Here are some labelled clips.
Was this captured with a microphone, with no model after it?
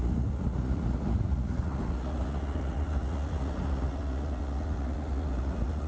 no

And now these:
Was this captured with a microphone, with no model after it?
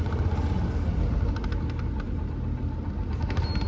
yes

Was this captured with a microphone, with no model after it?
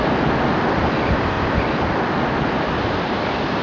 yes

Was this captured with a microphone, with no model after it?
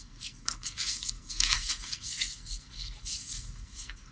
no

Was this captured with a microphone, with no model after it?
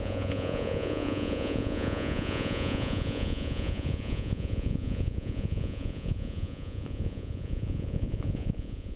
no